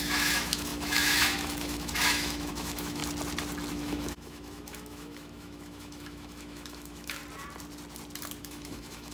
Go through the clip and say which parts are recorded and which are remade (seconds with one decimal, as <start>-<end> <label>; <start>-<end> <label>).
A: 0.0-3.0 remade; 3.0-3.7 recorded; 3.7-7.2 remade; 7.2-8.4 recorded; 8.4-9.1 remade